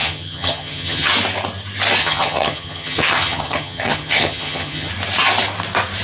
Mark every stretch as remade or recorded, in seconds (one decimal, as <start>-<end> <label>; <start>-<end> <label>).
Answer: 0.0-1.1 remade; 1.1-2.0 recorded; 2.0-4.9 remade; 4.9-6.0 recorded